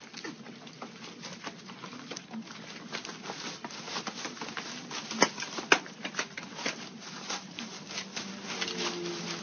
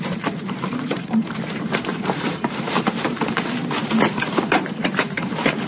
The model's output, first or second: second